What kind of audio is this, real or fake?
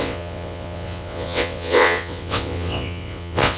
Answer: fake